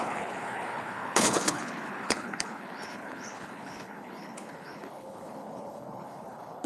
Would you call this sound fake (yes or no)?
yes